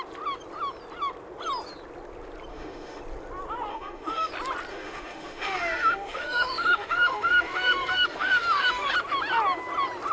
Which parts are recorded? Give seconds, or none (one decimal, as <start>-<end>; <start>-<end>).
0.0-2.5; 3.0-3.7; 4.3-4.7; 8.9-10.1